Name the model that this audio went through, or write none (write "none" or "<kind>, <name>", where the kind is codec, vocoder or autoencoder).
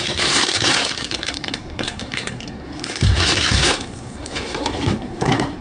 codec, SNAC